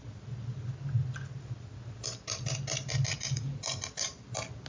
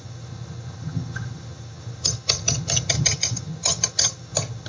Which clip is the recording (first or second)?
first